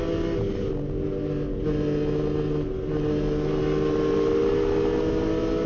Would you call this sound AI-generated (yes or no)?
no